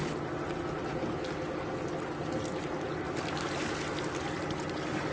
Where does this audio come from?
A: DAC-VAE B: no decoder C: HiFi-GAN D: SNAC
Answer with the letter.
B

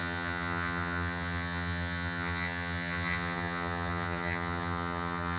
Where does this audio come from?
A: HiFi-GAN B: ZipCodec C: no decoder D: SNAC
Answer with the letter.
A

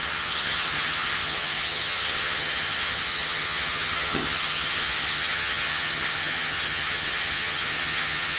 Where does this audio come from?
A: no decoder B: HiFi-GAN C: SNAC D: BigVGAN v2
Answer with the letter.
B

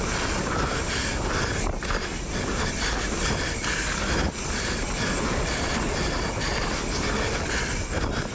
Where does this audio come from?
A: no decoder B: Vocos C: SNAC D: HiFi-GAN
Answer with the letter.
A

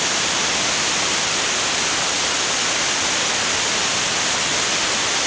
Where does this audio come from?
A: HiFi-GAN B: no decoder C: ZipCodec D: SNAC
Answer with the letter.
B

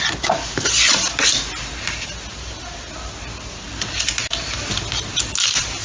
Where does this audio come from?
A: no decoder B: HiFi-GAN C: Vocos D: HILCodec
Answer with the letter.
A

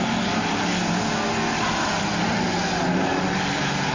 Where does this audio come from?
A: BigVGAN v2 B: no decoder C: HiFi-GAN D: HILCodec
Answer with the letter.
B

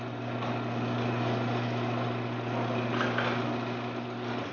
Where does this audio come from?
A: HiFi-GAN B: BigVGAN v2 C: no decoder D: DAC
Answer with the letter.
C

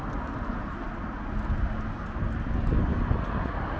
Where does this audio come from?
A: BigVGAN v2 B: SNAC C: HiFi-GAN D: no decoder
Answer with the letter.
D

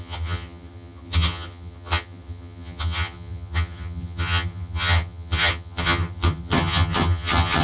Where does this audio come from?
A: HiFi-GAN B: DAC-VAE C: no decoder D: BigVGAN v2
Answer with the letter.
A